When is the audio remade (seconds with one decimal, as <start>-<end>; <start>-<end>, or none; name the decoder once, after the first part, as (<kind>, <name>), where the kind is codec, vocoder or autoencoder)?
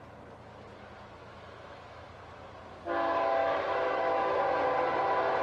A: 1.2-2.1 (autoencoder, DAC-VAE); 3.4-4.4